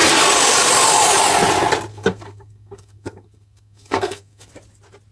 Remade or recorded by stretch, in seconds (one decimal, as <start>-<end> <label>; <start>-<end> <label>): 0.0-1.9 recorded; 1.9-4.5 remade; 4.5-5.1 recorded